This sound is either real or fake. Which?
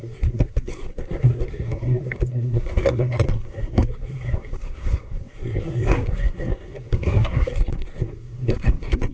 fake